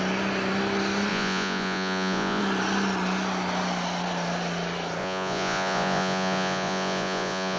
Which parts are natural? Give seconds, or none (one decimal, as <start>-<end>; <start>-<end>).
0.0-1.1; 2.4-5.0